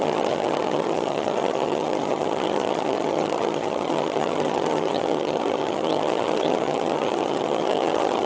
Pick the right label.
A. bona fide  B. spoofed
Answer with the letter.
B